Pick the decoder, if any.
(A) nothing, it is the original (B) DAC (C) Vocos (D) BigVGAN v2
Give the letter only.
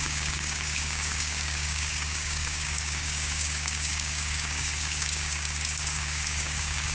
B